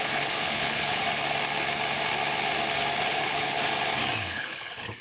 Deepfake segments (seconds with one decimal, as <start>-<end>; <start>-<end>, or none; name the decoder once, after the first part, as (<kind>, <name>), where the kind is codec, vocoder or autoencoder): 0.0-1.0 (codec, HILCodec); 3.1-3.6; 4.2-5.0